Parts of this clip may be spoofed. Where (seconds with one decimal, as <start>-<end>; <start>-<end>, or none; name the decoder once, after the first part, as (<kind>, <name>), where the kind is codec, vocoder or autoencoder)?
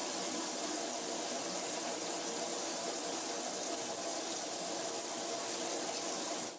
2.5-3.4 (vocoder, BigVGAN v2)